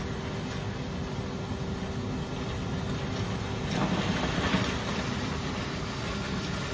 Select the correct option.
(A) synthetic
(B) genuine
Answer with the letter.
B